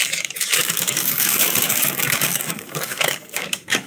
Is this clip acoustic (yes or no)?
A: no